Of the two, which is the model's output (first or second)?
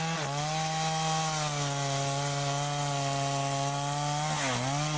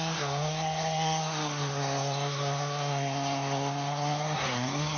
second